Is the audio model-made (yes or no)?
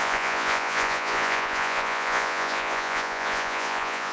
yes